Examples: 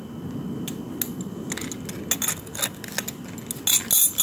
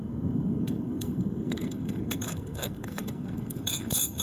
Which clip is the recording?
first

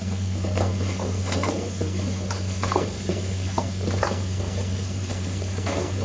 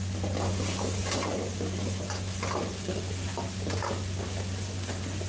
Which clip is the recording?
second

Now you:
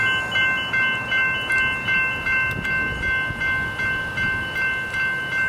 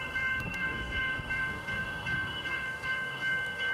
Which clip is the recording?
first